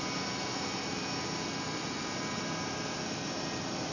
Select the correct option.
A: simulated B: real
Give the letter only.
B